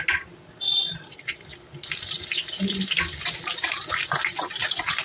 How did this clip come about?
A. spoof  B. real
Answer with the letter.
B